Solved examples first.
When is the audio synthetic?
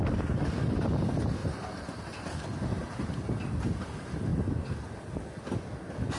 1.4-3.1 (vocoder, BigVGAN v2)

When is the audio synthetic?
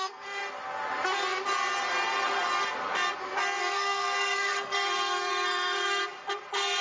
0.0-0.4 (codec, SNAC); 3.6-6.0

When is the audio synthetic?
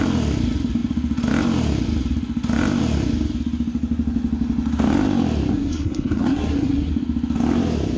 5.5-6.9 (codec, SNAC)